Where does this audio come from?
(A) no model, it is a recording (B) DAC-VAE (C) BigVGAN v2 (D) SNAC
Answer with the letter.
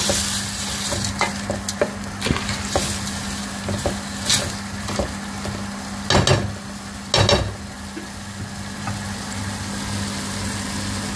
A